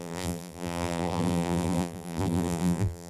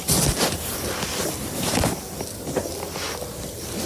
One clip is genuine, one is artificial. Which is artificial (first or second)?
first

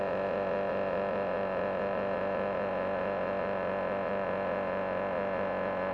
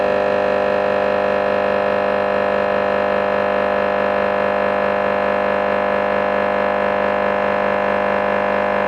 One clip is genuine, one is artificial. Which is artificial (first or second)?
first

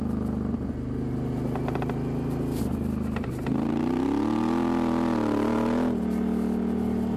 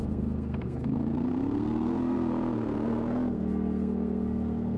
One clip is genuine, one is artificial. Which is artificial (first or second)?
second